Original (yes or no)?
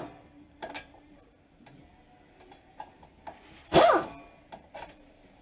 yes